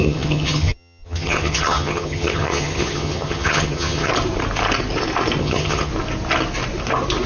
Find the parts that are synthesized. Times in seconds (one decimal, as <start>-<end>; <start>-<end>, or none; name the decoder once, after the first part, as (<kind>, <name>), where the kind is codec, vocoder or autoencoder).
0.0-4.1 (vocoder, HiFi-GAN); 5.4-5.9